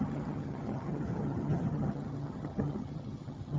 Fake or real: fake